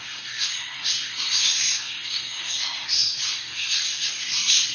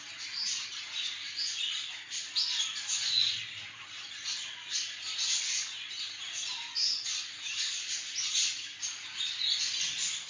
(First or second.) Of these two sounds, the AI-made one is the first